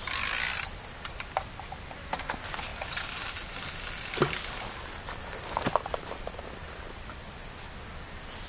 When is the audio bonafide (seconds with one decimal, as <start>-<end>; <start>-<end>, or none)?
0.0-8.5